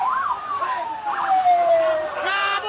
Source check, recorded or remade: remade